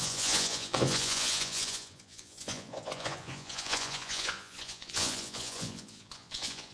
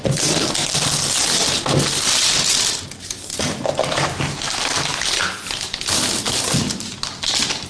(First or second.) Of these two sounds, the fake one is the first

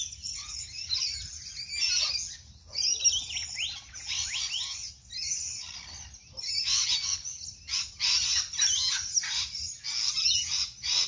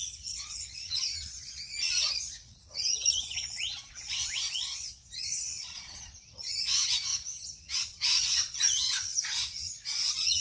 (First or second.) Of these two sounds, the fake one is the second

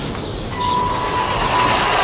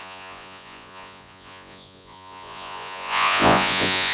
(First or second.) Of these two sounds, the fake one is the second